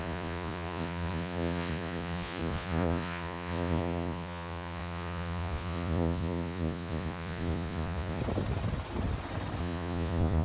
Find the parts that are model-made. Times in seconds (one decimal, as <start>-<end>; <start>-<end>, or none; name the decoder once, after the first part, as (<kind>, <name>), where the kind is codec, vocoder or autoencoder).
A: 0.0-8.2 (vocoder, Vocos); 9.6-10.4